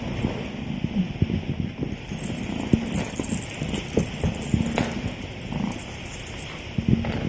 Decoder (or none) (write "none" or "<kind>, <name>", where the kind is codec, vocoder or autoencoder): none